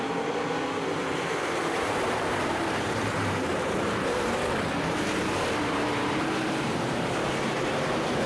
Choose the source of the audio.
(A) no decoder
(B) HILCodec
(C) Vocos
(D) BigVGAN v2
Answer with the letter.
D